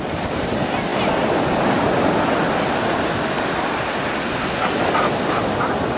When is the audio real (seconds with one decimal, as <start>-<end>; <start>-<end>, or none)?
0.0-6.0